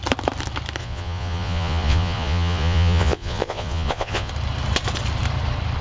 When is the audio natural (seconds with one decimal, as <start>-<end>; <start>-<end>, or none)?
0.0-0.8; 4.3-5.8